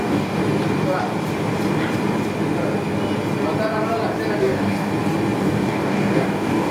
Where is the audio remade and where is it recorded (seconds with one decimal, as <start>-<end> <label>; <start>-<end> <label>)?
0.0-0.4 remade; 0.4-4.4 recorded; 4.4-4.9 remade; 4.9-5.4 recorded; 5.4-6.7 remade